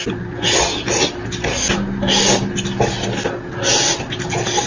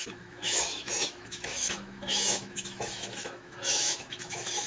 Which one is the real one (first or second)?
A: first